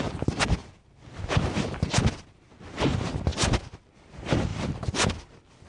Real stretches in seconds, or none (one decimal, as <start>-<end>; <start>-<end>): 0.0-0.6; 2.5-4.5; 5.1-5.7